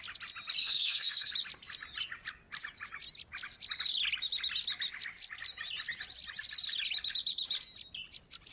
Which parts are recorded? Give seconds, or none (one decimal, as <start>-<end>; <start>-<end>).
0.0-0.6; 1.3-8.5